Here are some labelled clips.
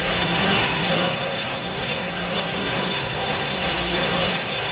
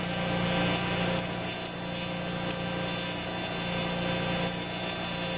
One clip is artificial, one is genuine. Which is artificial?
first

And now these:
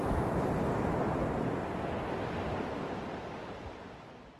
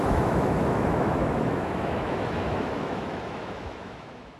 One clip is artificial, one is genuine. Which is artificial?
second